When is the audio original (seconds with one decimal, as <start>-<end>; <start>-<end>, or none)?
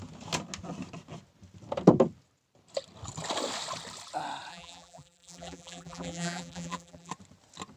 0.0-4.5; 7.1-7.8